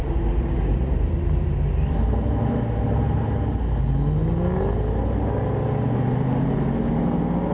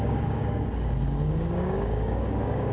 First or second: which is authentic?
first